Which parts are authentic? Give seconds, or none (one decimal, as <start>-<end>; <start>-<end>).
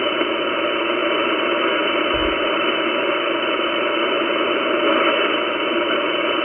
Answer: 0.0-6.4